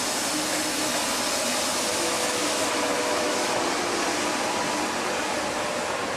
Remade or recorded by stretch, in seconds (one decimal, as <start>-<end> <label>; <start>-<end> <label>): 0.0-1.9 recorded; 1.9-3.6 remade; 3.6-6.2 recorded